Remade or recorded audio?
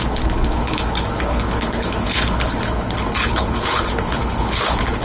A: remade